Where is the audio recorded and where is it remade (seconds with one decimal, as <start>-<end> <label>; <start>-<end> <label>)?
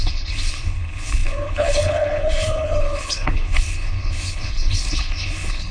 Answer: 0.0-5.7 remade